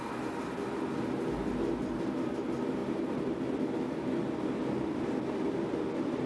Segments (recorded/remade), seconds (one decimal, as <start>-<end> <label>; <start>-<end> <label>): 0.0-6.3 recorded

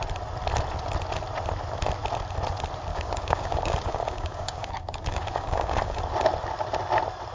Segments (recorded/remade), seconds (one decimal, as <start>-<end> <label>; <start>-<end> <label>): 0.0-2.9 recorded; 2.9-6.0 remade; 6.0-7.3 recorded